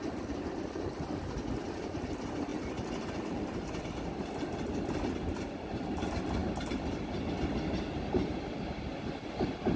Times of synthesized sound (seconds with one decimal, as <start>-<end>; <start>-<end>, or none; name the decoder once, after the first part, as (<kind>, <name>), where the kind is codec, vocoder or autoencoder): 2.5-3.8 (vocoder, BigVGAN v2); 6.4-7.4